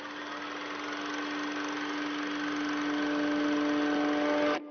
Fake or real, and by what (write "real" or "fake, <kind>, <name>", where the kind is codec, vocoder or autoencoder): real